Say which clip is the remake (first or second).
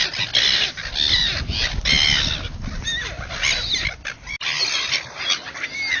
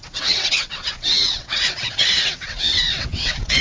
second